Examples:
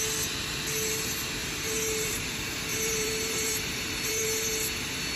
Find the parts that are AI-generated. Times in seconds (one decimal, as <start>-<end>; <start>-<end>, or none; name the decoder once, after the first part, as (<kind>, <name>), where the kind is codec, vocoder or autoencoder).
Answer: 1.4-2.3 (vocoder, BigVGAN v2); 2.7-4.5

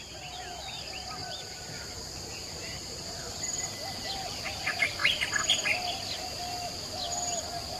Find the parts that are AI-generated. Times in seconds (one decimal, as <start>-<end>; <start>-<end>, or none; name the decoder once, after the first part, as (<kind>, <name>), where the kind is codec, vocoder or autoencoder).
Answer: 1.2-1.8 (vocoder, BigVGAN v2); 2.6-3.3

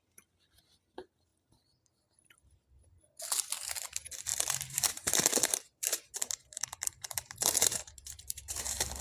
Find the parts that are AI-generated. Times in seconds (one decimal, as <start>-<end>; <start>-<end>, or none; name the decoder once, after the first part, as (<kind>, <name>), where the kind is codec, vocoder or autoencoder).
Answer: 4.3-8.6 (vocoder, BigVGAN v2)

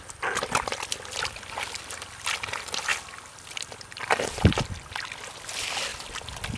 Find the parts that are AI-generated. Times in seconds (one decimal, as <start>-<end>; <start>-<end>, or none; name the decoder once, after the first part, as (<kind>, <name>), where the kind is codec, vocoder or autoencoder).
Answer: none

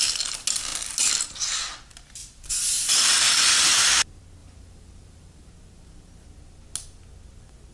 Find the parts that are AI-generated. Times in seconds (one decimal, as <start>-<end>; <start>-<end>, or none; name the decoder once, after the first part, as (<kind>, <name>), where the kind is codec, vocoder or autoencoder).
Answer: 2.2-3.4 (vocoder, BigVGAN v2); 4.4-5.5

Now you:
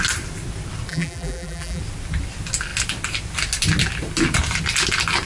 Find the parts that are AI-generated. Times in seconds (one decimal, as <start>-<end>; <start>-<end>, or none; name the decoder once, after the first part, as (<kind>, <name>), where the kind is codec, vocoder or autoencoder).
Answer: 0.9-1.8 (vocoder, BigVGAN v2)